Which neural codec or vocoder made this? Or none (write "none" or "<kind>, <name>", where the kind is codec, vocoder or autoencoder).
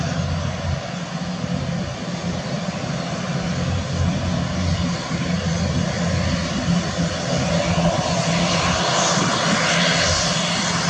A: none